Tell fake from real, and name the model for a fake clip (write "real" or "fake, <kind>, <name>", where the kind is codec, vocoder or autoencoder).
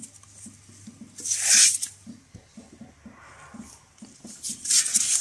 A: real